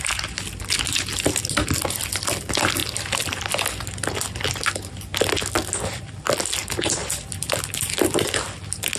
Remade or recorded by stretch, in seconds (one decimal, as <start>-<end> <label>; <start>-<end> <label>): 0.0-2.8 recorded; 2.8-3.5 remade; 3.5-7.0 recorded; 7.0-8.0 remade; 8.0-9.0 recorded